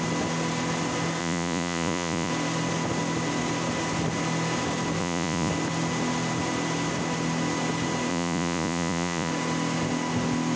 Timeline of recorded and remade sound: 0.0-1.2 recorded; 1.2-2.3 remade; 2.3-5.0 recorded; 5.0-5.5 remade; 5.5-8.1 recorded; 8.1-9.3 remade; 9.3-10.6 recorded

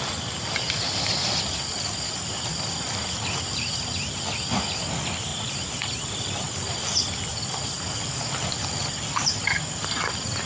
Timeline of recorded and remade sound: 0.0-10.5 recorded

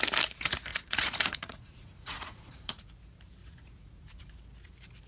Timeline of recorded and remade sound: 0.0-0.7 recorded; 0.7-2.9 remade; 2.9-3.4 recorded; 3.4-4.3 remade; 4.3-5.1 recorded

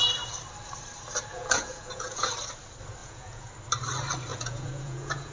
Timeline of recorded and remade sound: 0.0-1.3 recorded; 1.3-2.3 remade; 2.3-3.0 recorded; 3.0-3.5 remade; 3.5-4.3 recorded; 4.3-5.3 remade

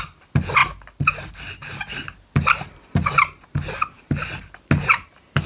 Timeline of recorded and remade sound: 0.0-5.5 recorded

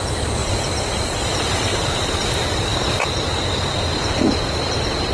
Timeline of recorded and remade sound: 0.0-0.4 recorded; 0.4-1.2 remade; 1.2-1.7 recorded; 1.7-2.3 remade; 2.3-5.1 recorded

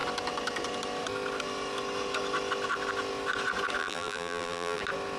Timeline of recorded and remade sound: 0.0-3.8 recorded; 3.8-4.8 remade; 4.8-5.2 recorded

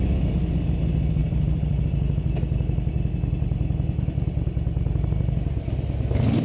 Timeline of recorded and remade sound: 0.0-1.2 recorded; 1.2-1.8 remade; 1.8-6.4 recorded